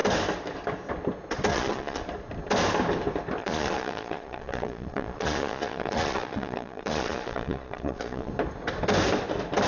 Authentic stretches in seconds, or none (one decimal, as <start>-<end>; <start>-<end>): 0.0-1.5; 2.0-3.4; 8.3-9.7